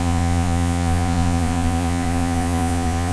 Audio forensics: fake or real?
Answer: fake